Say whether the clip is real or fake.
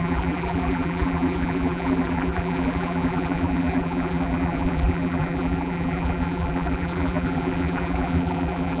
fake